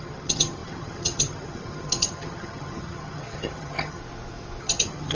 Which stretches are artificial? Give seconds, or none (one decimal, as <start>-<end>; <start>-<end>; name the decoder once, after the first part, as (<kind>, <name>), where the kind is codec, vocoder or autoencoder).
0.0-4.0 (vocoder, HiFi-GAN); 4.6-5.1